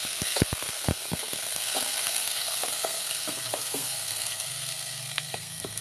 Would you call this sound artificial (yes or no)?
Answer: yes